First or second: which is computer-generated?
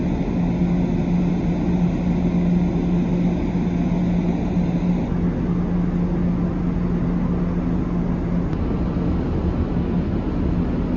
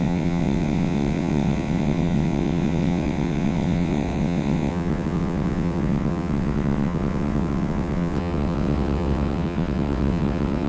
second